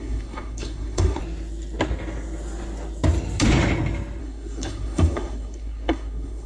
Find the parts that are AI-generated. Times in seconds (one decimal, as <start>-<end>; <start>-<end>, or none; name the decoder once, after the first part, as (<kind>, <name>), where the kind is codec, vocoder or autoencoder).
0.0-1.2 (codec, SNAC); 4.2-6.5